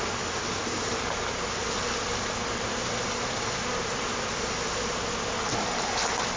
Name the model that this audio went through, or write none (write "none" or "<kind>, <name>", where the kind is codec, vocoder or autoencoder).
none